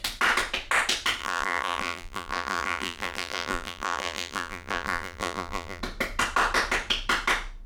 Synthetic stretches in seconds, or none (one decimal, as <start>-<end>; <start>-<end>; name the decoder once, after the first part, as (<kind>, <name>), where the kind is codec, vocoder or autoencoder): 1.2-5.8 (vocoder, BigVGAN v2)

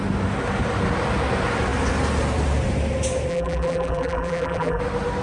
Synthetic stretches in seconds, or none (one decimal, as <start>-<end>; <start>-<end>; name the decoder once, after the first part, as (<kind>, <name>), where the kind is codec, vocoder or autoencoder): 3.3-4.8 (vocoder, BigVGAN v2)

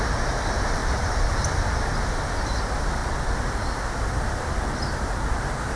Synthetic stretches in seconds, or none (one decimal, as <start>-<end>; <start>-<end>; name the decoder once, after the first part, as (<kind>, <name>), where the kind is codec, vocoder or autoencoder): 0.8-1.3 (vocoder, BigVGAN v2); 3.0-5.8

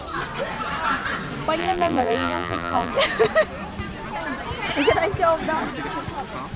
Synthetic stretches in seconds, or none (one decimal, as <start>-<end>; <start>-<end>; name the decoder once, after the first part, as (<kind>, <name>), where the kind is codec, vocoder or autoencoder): 1.6-2.9 (vocoder, BigVGAN v2)

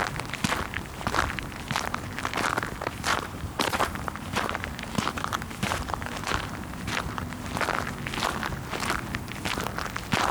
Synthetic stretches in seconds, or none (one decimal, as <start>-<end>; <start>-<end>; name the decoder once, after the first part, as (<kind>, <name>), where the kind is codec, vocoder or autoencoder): 3.1-5.9 (vocoder, BigVGAN v2)

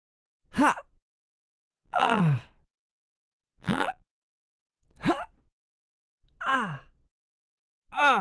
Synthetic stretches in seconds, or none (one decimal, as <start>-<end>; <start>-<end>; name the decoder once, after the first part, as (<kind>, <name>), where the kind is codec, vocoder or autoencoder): 1.7-2.2 (vocoder, BigVGAN v2); 2.7-4.8